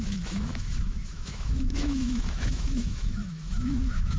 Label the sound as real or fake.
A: fake